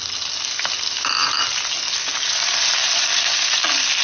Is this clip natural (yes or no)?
yes